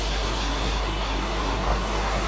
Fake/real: fake